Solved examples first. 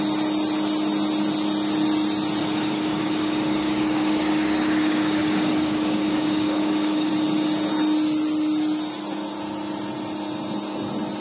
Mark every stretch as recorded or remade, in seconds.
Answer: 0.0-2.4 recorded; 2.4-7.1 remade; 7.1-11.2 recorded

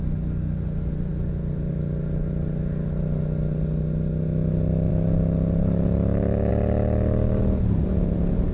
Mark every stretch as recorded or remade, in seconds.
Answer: 0.0-8.5 recorded

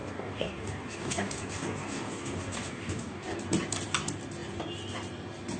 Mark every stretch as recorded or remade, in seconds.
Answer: 0.0-3.4 remade; 3.4-5.6 recorded

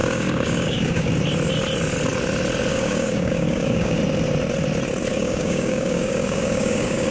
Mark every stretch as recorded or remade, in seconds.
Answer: 0.0-1.1 remade; 1.1-2.7 recorded; 2.7-4.0 remade; 4.0-5.1 recorded; 5.1-7.1 remade

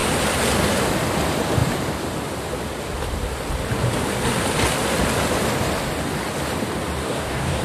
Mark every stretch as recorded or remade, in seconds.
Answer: 0.0-7.0 recorded; 7.0-7.6 remade

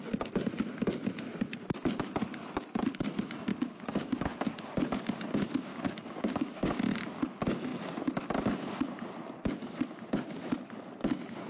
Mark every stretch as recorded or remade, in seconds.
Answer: 0.0-3.5 recorded; 3.5-4.6 remade; 4.6-5.7 recorded; 5.7-6.7 remade; 6.7-11.5 recorded

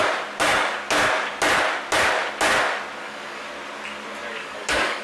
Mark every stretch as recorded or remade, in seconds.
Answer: 0.0-3.0 recorded; 3.0-3.5 remade; 3.5-4.3 recorded; 4.3-5.0 remade